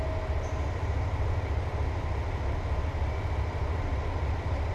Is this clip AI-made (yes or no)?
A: no